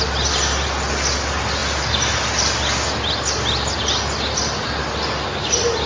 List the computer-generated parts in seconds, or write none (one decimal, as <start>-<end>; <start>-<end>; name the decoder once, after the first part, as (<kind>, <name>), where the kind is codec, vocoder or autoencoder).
none